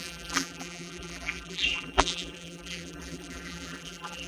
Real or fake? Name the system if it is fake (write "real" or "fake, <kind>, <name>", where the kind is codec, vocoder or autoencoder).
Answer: fake, vocoder, BigVGAN v2